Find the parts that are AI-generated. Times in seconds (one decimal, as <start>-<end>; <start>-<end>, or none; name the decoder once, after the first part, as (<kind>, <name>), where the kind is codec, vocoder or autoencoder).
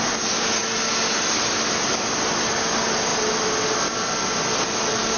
none